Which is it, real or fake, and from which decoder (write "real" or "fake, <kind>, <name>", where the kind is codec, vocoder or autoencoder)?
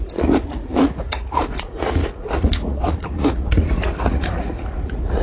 fake, vocoder, Vocos